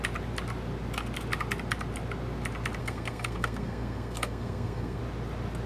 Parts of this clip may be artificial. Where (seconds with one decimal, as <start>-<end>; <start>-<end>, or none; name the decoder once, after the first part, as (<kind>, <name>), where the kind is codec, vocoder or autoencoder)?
2.8-5.0 (codec, SNAC)